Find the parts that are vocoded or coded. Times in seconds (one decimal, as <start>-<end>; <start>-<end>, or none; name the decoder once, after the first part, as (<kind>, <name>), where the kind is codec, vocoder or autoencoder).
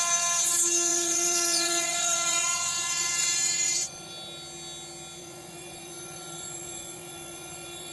0.9-4.1 (vocoder, Vocos); 5.2-7.9